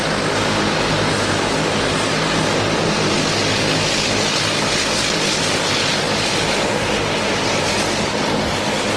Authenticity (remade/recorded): recorded